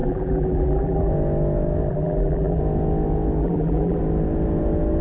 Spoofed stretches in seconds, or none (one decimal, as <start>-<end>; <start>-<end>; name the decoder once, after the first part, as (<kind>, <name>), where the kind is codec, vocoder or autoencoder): 0.0-1.1 (vocoder, BigVGAN v2); 1.9-2.6; 3.4-4.0